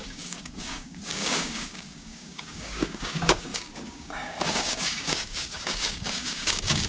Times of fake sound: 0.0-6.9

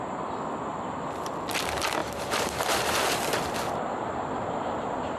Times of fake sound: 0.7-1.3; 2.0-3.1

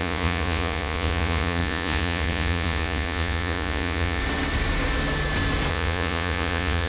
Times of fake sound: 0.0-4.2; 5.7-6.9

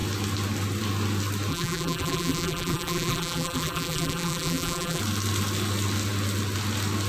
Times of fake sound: 1.5-5.0